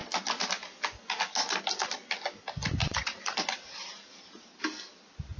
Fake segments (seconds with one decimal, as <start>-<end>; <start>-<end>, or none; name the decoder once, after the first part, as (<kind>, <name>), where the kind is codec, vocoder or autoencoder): 2.8-3.7 (vocoder, BigVGAN v2)